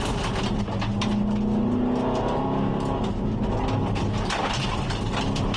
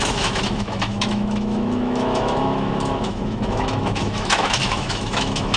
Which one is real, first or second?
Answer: first